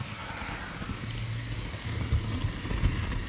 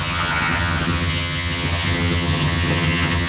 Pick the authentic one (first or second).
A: first